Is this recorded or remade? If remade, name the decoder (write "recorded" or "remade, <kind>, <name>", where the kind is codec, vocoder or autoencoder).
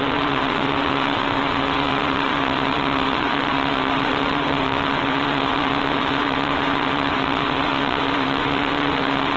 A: remade, vocoder, WaveNeXt